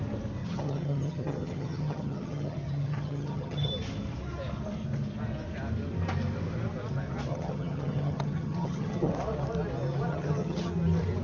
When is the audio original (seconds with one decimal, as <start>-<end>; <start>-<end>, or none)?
0.0-0.4; 3.7-7.3; 9.1-10.1; 10.7-11.2